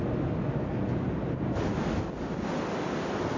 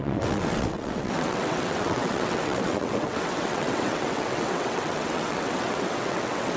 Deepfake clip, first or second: second